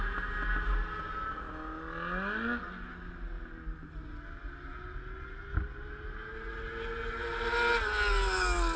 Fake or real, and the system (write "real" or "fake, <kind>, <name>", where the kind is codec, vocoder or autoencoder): real